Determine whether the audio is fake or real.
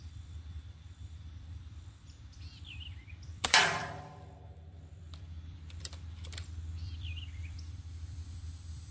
fake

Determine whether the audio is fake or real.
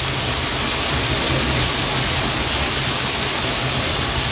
real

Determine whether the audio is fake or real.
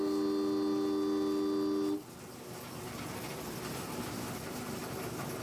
real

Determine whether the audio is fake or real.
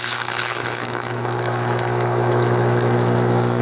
fake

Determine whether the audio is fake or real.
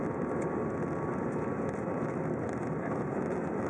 real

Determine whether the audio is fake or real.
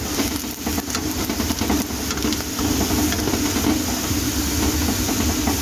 real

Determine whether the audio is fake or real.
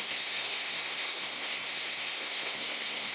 fake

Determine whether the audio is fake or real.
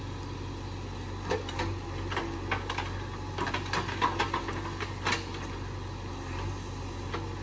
real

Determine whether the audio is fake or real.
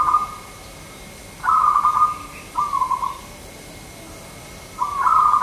real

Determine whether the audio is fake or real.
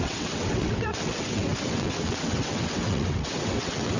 fake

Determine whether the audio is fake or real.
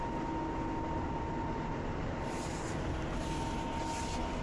real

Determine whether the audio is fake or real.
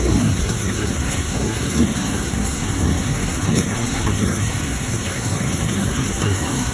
fake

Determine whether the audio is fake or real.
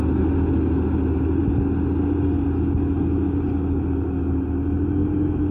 real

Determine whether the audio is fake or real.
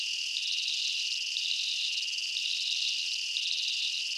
real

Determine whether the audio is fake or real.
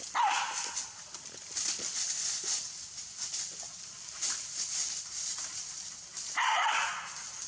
real